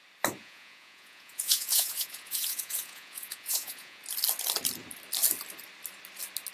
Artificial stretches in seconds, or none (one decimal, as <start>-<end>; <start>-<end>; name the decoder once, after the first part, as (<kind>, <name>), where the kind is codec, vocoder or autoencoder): 0.4-4.0 (vocoder, Vocos)